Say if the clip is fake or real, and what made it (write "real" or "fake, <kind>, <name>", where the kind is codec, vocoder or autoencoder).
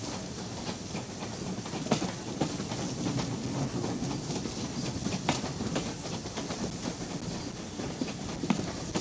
real